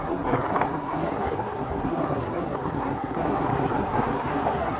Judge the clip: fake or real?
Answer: fake